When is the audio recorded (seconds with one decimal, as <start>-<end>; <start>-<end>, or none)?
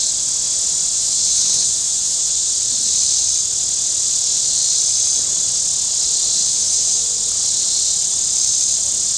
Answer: 0.0-0.9; 2.5-6.4; 7.2-9.2